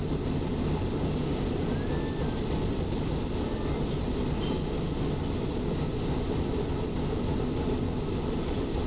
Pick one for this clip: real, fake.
real